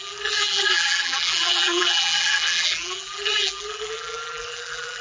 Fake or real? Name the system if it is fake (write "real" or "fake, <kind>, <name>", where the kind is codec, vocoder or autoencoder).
fake, vocoder, BigVGAN v2